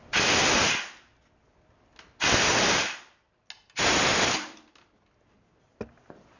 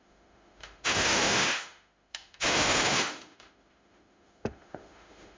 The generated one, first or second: second